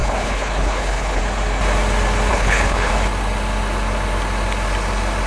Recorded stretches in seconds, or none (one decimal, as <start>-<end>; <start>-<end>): 1.2-2.3; 2.9-5.3